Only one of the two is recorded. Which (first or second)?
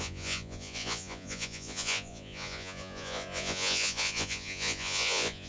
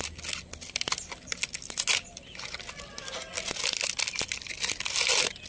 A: second